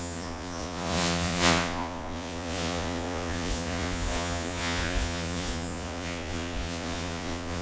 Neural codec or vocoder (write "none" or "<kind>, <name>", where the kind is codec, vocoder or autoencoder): vocoder, Vocos